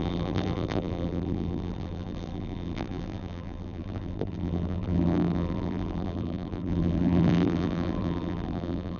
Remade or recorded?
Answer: remade